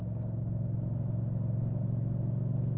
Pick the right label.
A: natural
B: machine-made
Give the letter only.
A